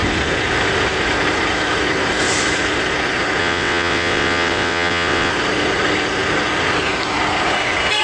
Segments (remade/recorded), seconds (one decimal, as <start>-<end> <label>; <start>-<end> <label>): 0.0-3.4 recorded; 3.4-5.3 remade; 5.3-8.0 recorded